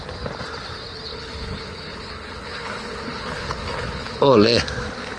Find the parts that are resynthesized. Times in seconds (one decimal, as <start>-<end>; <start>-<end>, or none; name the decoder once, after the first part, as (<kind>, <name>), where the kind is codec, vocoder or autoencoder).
1.1-4.2 (codec, HILCodec)